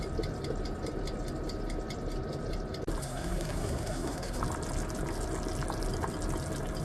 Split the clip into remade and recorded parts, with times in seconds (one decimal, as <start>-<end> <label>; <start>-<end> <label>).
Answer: 0.0-3.0 recorded; 3.0-4.4 remade; 4.4-6.8 recorded